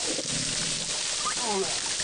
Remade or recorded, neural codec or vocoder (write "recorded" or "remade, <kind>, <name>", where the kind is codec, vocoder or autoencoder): recorded